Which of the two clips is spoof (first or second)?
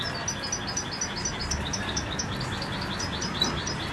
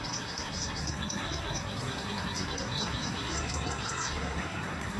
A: second